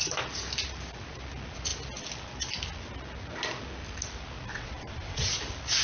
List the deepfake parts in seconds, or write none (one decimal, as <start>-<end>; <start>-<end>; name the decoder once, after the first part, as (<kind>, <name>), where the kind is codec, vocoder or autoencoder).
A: 4.5-5.3 (vocoder, WaveNeXt)